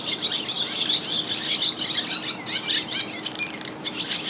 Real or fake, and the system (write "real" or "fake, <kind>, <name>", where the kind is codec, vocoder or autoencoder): real